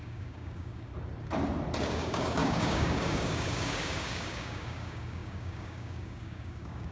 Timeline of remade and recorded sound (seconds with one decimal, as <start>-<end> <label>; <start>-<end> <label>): 0.0-0.9 remade; 0.9-1.8 recorded; 1.8-6.9 remade